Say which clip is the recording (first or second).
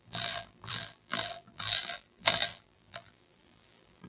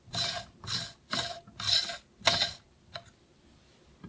second